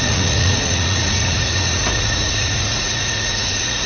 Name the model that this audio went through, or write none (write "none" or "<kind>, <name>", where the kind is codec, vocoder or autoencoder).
vocoder, Vocos